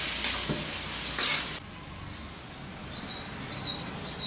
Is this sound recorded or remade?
recorded